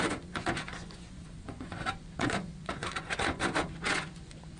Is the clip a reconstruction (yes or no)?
yes